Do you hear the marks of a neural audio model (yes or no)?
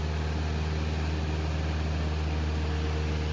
no